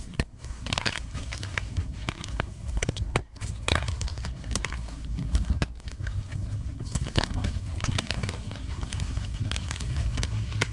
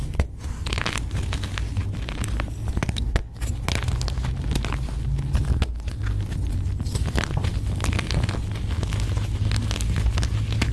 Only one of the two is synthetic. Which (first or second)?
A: first